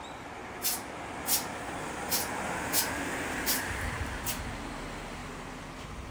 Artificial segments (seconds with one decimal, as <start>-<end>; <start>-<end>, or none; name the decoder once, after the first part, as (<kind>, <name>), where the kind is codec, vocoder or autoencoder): none